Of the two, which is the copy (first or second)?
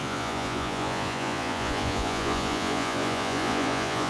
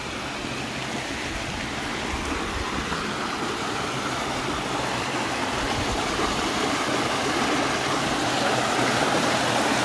first